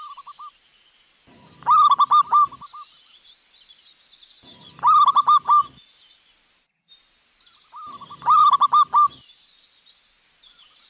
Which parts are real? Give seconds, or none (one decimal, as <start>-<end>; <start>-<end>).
0.0-10.9